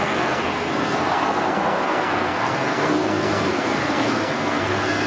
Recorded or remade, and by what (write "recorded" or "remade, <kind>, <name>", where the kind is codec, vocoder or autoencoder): remade, codec, SNAC